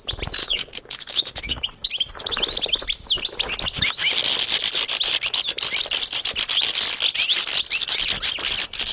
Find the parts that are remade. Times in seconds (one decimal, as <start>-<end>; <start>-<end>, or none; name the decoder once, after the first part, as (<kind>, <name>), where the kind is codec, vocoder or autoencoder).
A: 0.4-1.9 (codec, DAC)